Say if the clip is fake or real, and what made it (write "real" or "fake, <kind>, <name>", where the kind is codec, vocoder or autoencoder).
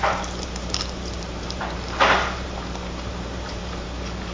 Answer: fake, vocoder, BigVGAN v2